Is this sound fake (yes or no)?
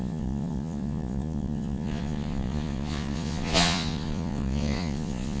yes